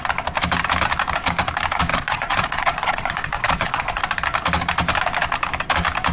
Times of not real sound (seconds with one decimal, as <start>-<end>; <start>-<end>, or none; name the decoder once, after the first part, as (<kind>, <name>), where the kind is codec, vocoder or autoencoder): 1.9-4.0 (vocoder, Vocos)